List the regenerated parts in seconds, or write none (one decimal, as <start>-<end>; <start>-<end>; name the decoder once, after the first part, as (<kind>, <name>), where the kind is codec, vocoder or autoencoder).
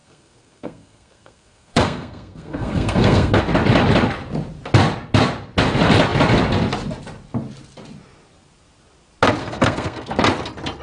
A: 0.0-3.4 (codec, SNAC); 9.4-10.2